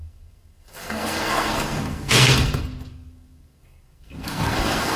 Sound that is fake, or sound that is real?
fake